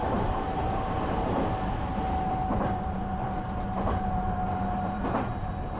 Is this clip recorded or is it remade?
remade